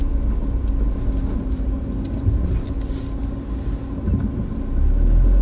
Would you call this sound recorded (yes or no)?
yes